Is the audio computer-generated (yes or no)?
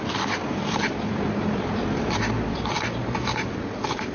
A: no